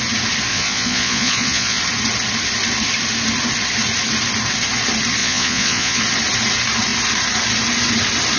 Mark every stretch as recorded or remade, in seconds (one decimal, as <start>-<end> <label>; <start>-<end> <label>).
0.0-0.5 recorded; 0.5-1.8 remade; 1.8-5.2 recorded; 5.2-6.0 remade; 6.0-8.4 recorded